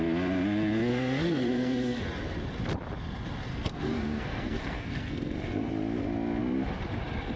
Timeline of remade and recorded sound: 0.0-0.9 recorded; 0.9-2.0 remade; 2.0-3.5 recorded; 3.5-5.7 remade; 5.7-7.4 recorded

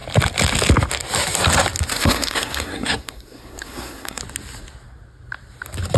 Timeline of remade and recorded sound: 0.0-1.9 recorded; 1.9-4.2 remade; 4.2-6.0 recorded